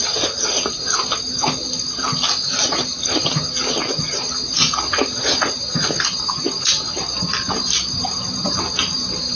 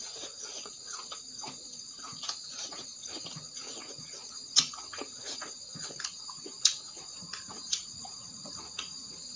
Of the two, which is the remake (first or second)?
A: second